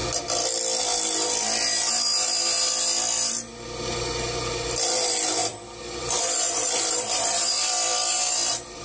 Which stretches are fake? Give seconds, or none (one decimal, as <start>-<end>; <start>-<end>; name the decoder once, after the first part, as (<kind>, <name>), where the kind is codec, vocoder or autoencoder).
5.4-8.8 (vocoder, BigVGAN v2)

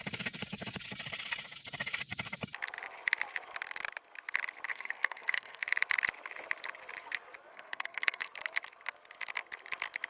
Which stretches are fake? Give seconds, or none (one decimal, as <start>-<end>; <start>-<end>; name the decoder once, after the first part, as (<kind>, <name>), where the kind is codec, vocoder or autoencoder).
4.7-5.7 (codec, SNAC); 7.5-8.3

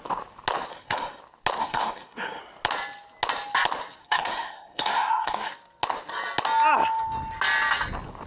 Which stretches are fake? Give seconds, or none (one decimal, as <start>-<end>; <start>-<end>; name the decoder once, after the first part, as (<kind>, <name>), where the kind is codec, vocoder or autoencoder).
0.7-1.2 (codec, SNAC); 1.6-2.4; 4.0-5.5

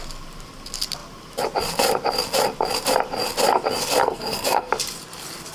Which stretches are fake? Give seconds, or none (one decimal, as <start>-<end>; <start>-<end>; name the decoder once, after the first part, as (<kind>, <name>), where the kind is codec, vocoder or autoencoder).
4.0-4.7 (codec, SNAC)